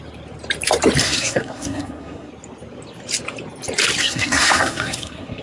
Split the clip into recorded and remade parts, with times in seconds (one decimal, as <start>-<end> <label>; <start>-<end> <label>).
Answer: 0.0-1.0 recorded; 1.0-2.3 remade; 2.3-4.0 recorded; 4.0-5.4 remade